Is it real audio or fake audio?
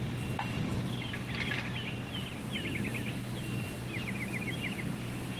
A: real